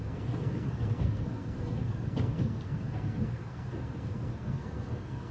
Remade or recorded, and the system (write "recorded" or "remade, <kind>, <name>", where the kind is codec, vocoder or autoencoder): remade, codec, SNAC